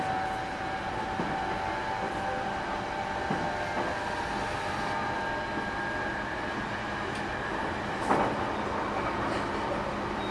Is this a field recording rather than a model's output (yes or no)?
yes